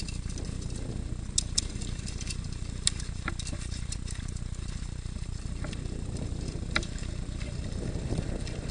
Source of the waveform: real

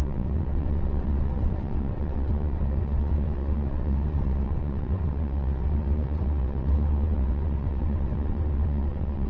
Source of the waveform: fake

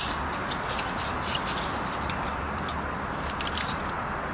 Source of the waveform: real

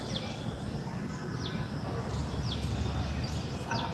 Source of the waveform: real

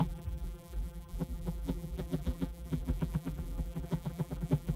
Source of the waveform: fake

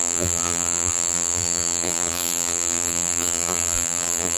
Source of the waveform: fake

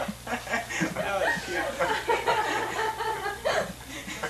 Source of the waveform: real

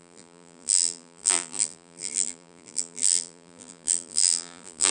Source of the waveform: fake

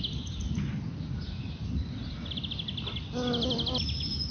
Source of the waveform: real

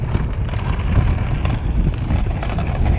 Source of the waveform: real